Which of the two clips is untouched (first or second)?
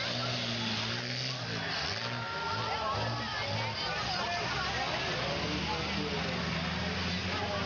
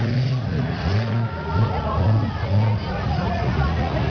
first